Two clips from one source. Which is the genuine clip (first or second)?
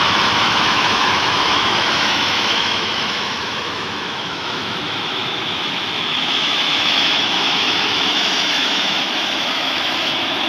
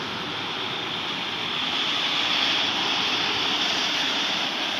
second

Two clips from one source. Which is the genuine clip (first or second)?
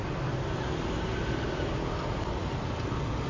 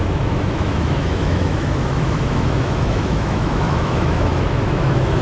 first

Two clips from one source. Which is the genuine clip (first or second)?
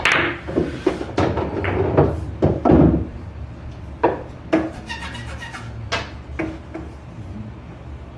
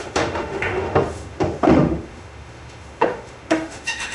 first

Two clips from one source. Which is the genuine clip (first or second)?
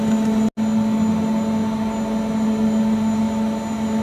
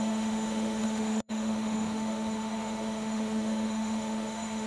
first